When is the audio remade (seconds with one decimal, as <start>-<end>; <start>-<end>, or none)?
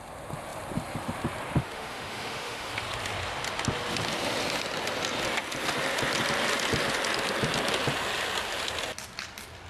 1.6-2.7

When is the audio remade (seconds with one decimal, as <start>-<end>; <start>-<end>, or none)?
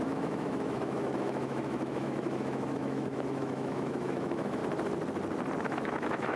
0.0-4.6; 5.6-6.4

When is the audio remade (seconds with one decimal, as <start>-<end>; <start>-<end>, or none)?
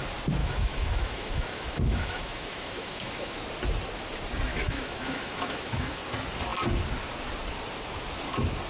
0.4-3.4; 4.5-6.0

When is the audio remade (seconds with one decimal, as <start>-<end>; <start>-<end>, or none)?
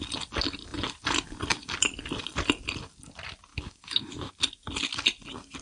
3.5-4.3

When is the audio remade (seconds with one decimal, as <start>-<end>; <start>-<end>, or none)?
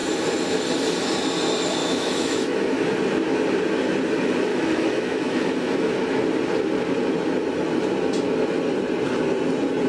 1.8-2.8; 4.5-5.5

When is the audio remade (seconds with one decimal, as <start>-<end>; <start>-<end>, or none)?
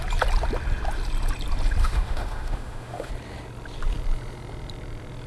1.8-3.1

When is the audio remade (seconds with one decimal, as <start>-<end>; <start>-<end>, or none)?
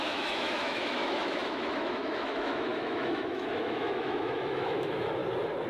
0.0-5.2